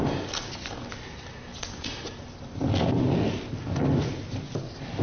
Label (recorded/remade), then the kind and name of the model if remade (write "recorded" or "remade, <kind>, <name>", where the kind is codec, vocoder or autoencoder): recorded